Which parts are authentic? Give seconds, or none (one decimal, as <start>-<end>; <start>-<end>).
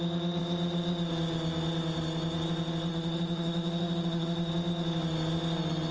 0.0-2.9; 4.5-5.9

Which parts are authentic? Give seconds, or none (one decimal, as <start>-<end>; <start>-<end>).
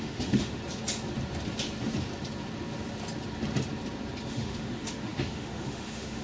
0.6-4.3